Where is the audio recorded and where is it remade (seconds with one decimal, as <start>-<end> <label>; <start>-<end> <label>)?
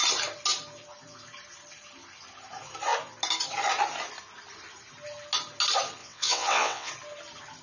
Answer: 0.0-6.0 recorded; 6.0-6.9 remade; 6.9-7.6 recorded